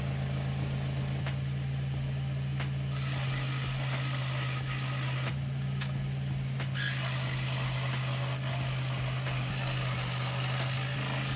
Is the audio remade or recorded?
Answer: recorded